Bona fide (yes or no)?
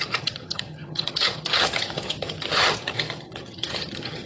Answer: no